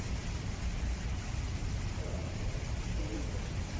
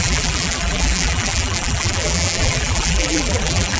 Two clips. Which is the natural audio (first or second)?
first